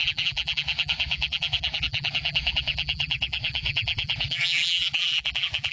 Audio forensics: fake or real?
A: fake